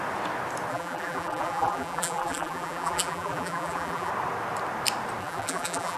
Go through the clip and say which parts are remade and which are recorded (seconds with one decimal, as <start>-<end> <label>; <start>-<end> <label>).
0.0-0.7 recorded; 0.7-4.1 remade; 4.1-5.2 recorded; 5.2-6.0 remade